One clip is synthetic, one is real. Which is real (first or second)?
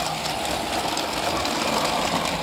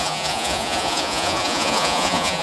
first